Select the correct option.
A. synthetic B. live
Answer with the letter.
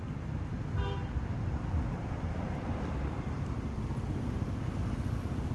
B